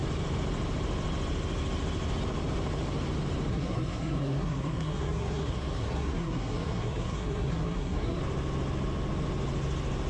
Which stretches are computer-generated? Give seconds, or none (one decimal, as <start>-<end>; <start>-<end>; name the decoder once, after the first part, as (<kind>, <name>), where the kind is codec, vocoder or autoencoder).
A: 3.5-8.2 (codec, SNAC)